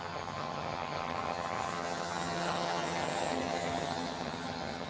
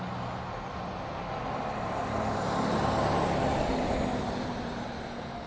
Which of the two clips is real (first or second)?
second